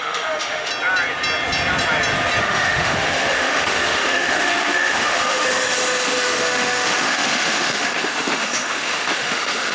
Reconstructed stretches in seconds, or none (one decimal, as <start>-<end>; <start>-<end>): 0.0-0.7; 2.4-9.7

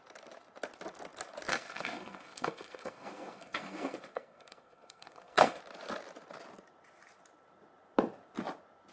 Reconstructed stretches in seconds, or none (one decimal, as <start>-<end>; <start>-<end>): 1.5-5.6